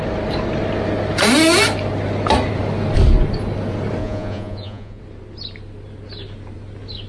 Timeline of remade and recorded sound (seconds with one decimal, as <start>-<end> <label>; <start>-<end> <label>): 0.0-4.0 recorded; 4.0-5.0 remade; 5.0-7.1 recorded